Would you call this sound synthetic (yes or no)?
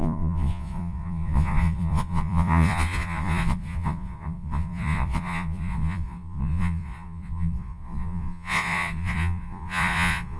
yes